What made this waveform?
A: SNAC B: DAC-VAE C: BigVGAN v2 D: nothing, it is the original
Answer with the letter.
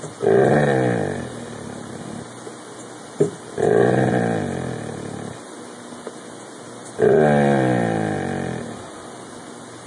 D